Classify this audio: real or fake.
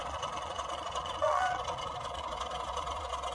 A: fake